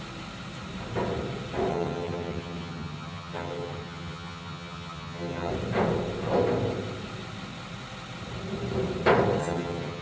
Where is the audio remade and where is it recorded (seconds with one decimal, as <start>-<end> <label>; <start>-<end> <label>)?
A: 0.0-1.7 recorded; 1.7-5.5 remade; 5.5-9.4 recorded; 9.4-10.0 remade

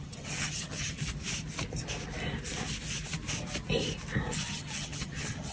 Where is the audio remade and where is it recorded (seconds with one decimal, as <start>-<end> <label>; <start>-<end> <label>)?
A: 0.0-1.0 remade; 1.0-4.3 recorded; 4.3-5.5 remade

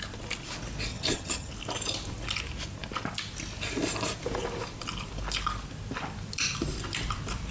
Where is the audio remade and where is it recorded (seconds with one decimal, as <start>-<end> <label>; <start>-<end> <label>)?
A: 0.0-0.9 recorded; 0.9-1.5 remade; 1.5-7.5 recorded

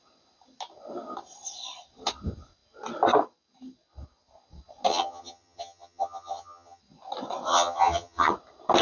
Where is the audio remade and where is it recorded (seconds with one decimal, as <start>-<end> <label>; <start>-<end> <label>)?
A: 0.0-4.9 recorded; 4.9-6.8 remade; 6.8-7.5 recorded; 7.5-8.3 remade; 8.3-8.8 recorded

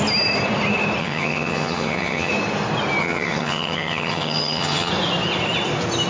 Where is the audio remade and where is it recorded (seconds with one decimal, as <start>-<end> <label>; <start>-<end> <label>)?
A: 0.0-1.0 recorded; 1.0-2.3 remade; 2.3-3.0 recorded; 3.0-4.9 remade; 4.9-6.1 recorded

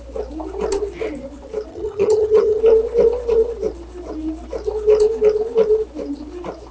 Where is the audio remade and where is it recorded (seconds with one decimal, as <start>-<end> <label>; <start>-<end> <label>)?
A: 0.0-1.7 recorded; 1.7-2.6 remade; 2.6-6.7 recorded

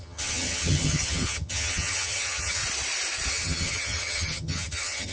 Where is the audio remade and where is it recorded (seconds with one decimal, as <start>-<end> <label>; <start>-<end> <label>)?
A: 0.0-2.6 remade; 2.6-3.3 recorded; 3.3-5.1 remade